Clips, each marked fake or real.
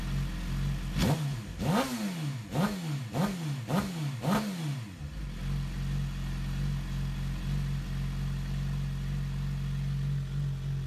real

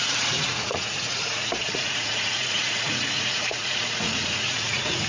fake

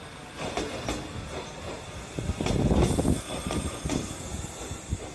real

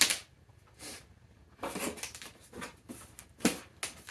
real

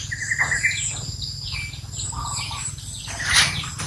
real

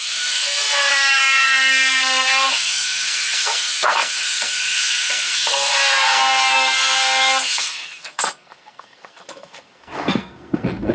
fake